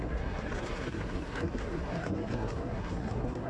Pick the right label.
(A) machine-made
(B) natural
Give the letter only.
A